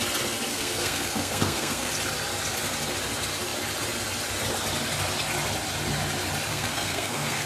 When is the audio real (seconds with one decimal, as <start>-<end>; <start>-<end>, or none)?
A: 0.0-0.5; 1.9-6.5